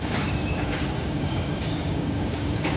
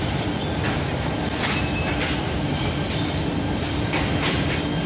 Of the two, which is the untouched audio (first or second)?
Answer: second